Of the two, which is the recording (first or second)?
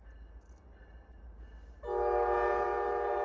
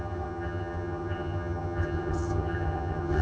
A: first